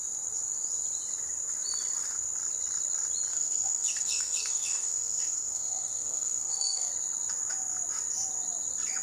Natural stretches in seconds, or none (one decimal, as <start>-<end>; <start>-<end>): 0.0-3.3; 6.9-9.0